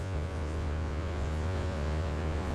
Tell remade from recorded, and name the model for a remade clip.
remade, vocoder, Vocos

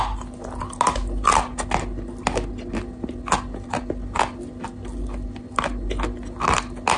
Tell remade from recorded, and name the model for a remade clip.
recorded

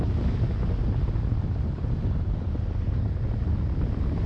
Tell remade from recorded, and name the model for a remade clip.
recorded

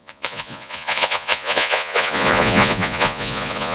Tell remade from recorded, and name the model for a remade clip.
remade, vocoder, Vocos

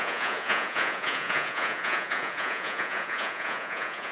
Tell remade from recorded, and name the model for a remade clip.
remade, vocoder, Vocos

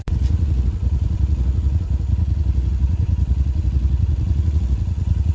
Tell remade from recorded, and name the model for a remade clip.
remade, vocoder, Vocos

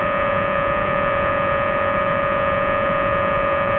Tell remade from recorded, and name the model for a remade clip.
remade, vocoder, Vocos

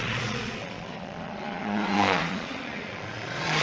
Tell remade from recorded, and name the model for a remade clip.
remade, vocoder, Vocos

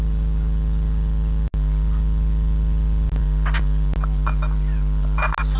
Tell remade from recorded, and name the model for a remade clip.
recorded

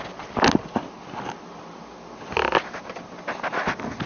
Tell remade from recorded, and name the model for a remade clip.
recorded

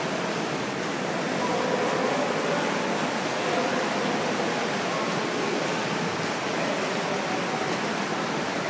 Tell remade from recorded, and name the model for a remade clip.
recorded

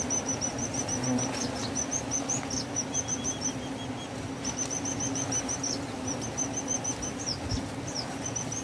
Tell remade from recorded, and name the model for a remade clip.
recorded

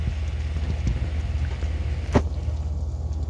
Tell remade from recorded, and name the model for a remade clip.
recorded